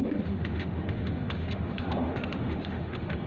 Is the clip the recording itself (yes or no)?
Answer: no